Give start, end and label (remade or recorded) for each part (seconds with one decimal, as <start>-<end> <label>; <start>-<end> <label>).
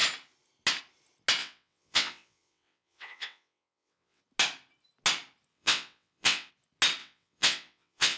0.0-1.4 recorded; 1.4-4.2 remade; 4.2-5.5 recorded; 5.5-6.5 remade; 6.5-7.0 recorded; 7.0-8.2 remade